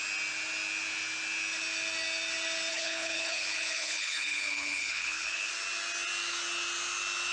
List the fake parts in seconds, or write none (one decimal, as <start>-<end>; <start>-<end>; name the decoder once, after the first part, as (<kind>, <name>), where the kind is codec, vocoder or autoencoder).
2.7-5.5 (codec, HILCodec)